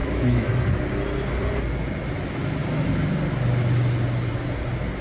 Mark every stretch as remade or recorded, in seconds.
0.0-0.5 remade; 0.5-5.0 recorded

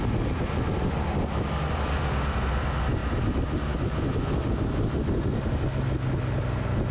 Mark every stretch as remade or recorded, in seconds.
0.0-6.9 recorded

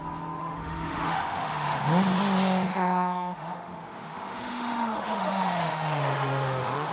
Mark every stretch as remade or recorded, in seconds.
0.0-0.4 recorded; 0.4-1.8 remade; 1.8-2.7 recorded; 2.7-6.9 remade

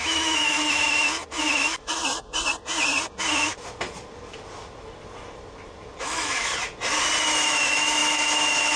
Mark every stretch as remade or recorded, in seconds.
0.0-1.1 remade; 1.1-1.6 recorded; 1.6-2.0 remade; 2.0-6.0 recorded; 6.0-6.5 remade; 6.5-7.2 recorded; 7.2-8.8 remade

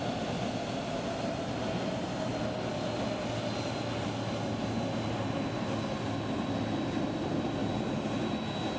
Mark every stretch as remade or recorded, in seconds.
0.0-8.8 recorded

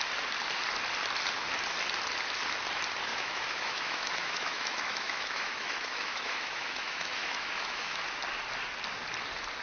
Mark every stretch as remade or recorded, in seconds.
0.0-3.1 recorded; 3.1-8.0 remade; 8.0-9.6 recorded